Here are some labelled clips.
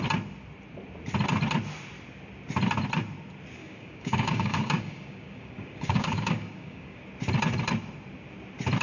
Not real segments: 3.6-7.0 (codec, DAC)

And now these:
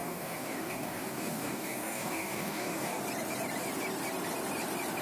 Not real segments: 0.0-3.0 (codec, DAC)

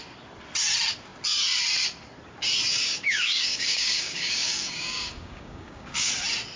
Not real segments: 2.7-6.1 (codec, DAC)

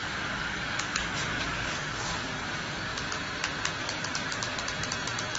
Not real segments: 0.0-3.2 (codec, DAC); 3.8-4.6

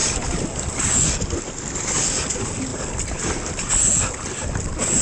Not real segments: none

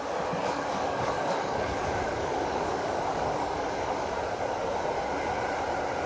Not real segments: 0.4-4.1 (codec, DAC)

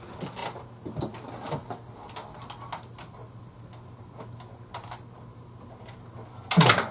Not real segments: none